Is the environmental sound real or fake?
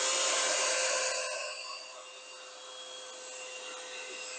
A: real